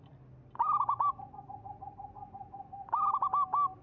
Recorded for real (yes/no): yes